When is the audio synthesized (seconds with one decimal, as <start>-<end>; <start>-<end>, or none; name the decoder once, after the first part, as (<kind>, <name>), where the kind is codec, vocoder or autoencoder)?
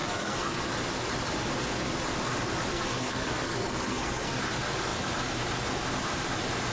0.0-0.7 (codec, SNAC); 2.7-4.4